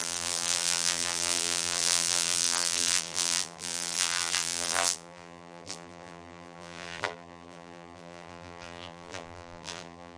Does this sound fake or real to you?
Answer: fake